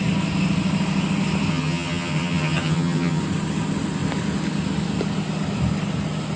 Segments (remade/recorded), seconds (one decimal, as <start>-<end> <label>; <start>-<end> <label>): 0.0-1.5 recorded; 1.5-3.2 remade; 3.2-6.4 recorded